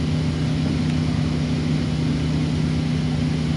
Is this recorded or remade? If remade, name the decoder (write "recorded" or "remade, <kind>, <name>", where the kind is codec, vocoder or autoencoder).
recorded